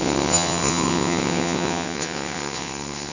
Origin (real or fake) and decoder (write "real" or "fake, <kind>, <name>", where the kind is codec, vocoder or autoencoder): fake, vocoder, WaveNeXt